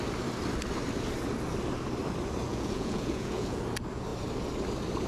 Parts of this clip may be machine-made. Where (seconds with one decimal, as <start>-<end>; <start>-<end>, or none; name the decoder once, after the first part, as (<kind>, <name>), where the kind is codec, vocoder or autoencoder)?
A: 2.5-3.6 (vocoder, Vocos)